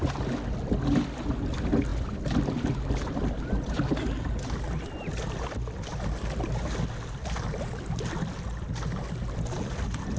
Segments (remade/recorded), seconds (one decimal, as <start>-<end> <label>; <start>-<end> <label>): 0.0-1.9 recorded; 1.9-2.8 remade; 2.8-10.2 recorded